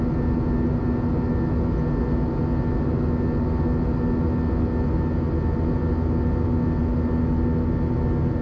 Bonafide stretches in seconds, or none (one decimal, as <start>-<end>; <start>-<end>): 0.0-8.4